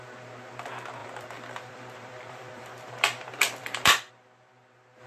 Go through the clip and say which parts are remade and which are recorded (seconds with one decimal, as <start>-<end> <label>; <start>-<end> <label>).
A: 0.0-1.0 recorded; 1.0-4.1 remade; 4.1-5.1 recorded